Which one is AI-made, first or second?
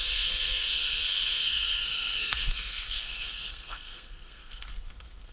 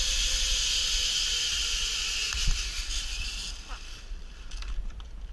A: first